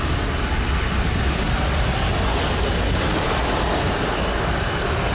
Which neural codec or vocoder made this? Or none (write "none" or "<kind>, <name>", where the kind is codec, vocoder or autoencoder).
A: none